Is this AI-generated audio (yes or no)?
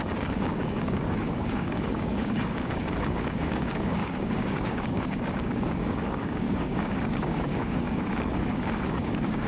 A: yes